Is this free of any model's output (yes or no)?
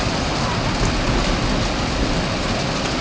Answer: yes